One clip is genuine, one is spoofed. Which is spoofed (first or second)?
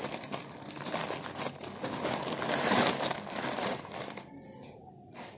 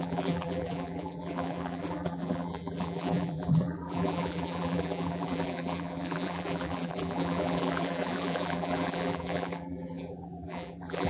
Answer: second